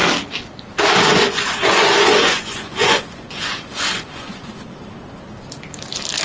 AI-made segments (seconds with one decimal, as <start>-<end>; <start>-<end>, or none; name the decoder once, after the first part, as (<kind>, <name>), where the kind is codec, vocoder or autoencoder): 1.1-4.8 (vocoder, Vocos)